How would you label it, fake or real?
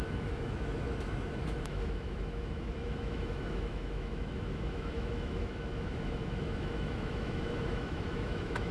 fake